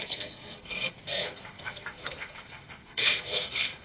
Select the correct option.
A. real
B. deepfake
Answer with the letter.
B